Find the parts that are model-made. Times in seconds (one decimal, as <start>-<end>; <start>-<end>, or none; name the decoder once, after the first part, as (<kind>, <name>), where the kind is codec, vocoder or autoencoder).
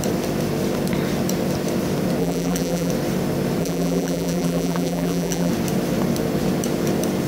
2.2-2.9 (vocoder, BigVGAN v2); 3.6-5.5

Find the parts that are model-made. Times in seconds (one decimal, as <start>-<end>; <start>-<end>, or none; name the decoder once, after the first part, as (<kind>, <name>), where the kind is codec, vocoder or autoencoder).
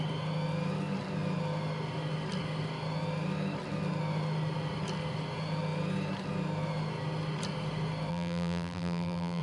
8.1-9.4 (vocoder, BigVGAN v2)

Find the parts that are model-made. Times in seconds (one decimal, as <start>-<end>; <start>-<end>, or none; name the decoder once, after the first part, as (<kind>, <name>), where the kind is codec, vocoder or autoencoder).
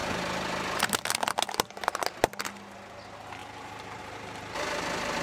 none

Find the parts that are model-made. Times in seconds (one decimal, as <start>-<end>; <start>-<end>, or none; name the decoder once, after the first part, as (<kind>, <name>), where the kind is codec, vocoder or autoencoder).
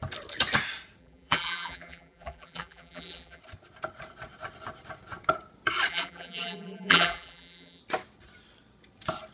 1.0-3.4 (vocoder, BigVGAN v2); 5.9-7.8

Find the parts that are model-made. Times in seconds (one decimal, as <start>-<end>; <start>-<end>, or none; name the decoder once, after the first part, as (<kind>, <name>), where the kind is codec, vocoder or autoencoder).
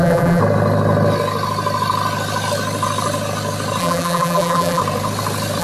0.0-0.4 (vocoder, BigVGAN v2); 3.8-4.8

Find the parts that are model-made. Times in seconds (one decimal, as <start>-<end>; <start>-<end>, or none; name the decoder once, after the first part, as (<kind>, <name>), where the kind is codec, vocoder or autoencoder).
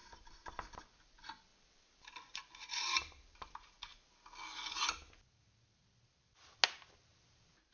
1.5-2.4 (vocoder, BigVGAN v2)